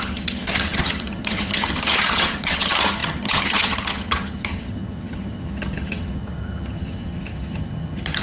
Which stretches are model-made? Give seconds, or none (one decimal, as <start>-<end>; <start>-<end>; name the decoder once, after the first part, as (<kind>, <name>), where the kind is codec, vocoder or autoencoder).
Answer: 0.0-8.2 (vocoder, HiFi-GAN)